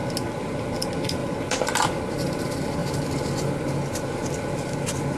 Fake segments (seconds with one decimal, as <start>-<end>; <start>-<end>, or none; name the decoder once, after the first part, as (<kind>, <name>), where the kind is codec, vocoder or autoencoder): none